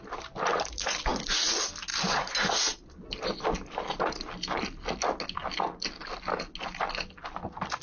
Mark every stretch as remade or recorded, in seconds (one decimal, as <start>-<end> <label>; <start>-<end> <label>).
0.0-0.5 recorded; 0.5-1.0 remade; 1.0-7.8 recorded